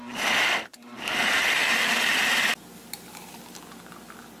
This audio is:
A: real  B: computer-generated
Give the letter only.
A